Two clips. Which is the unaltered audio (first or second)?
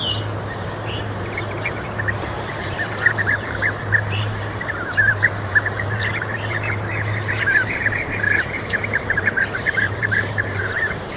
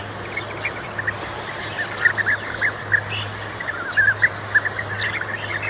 second